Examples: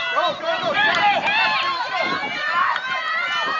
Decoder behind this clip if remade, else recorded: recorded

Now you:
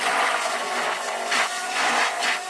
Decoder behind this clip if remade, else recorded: remade, vocoder, Vocos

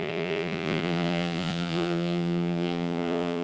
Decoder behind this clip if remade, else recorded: remade, vocoder, Vocos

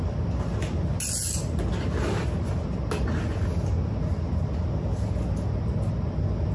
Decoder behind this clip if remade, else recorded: recorded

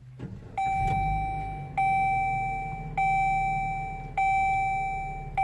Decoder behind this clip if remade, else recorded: recorded